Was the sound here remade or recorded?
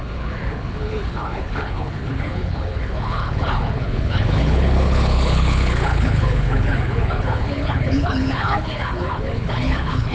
remade